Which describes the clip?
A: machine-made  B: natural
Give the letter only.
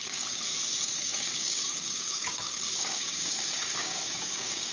A